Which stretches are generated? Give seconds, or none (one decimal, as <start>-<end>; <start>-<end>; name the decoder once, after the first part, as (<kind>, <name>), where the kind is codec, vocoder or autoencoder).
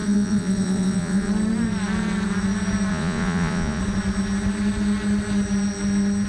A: 0.0-1.3 (vocoder, Vocos); 2.9-3.8